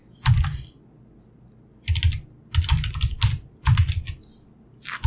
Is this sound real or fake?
real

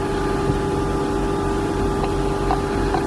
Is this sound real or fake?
real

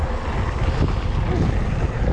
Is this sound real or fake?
real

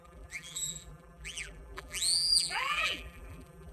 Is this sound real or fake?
fake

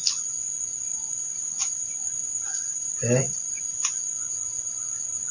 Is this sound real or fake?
fake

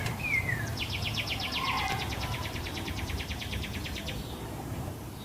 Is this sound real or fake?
fake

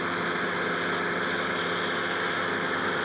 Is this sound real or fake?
real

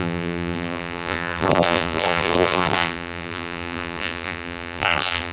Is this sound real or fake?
fake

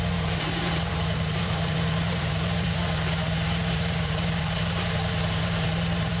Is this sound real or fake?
fake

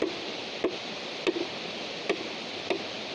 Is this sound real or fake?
real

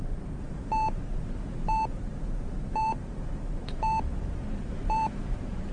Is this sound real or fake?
fake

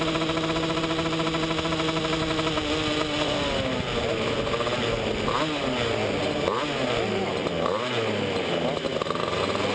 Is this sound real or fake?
real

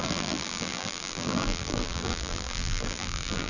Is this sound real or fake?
fake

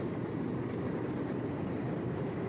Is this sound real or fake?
fake